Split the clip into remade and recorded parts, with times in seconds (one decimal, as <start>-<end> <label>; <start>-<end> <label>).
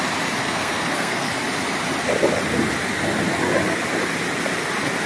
0.0-0.4 recorded; 0.4-1.3 remade; 1.3-5.1 recorded